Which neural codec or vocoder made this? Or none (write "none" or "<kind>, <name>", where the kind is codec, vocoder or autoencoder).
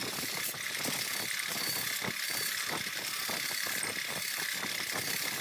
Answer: none